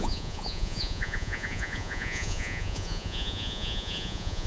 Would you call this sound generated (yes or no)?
yes